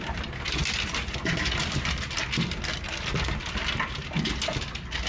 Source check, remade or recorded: recorded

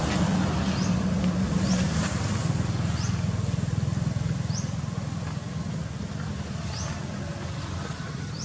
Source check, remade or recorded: recorded